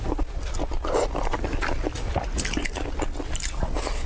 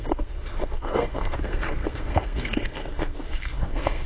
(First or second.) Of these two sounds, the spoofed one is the second